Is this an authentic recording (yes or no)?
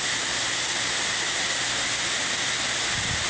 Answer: yes